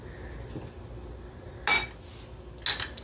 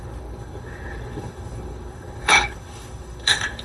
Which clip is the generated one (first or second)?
second